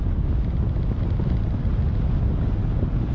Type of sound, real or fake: real